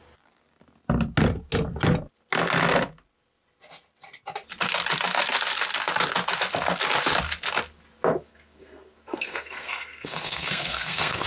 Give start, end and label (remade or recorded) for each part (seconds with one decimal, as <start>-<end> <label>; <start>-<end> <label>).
0.0-8.3 recorded; 8.3-11.3 remade

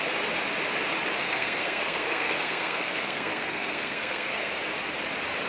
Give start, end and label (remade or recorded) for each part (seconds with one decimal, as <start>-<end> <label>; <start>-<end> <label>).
0.0-1.2 recorded; 1.2-4.5 remade; 4.5-5.5 recorded